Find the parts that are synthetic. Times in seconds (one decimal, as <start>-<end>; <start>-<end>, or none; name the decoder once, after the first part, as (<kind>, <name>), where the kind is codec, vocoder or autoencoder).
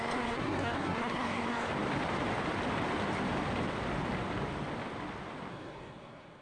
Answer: 0.0-1.7 (codec, SNAC); 5.5-6.4